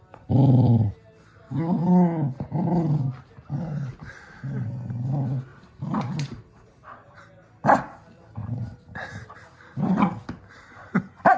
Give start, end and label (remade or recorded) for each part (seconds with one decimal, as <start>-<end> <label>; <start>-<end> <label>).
0.0-5.5 recorded; 5.5-7.2 remade; 7.2-8.4 recorded; 8.4-9.8 remade; 9.8-11.4 recorded